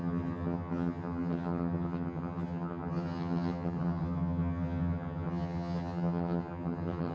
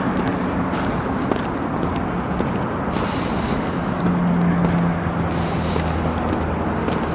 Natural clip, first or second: second